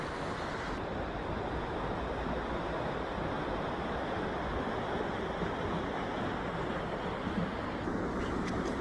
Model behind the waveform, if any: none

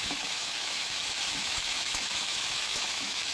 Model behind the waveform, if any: autoencoder, DAC-VAE